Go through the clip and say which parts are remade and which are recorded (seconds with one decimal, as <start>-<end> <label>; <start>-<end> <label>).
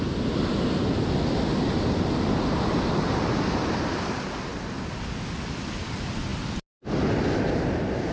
0.0-8.1 recorded